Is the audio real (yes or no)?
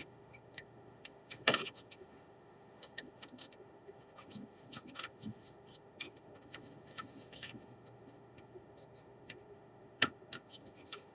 no